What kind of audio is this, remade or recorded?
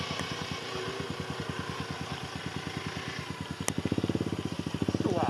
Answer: recorded